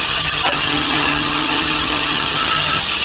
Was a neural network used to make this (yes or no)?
yes